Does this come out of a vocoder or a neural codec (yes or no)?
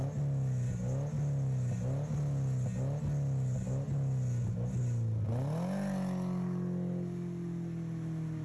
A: no